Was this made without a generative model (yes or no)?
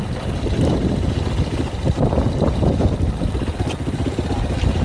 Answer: yes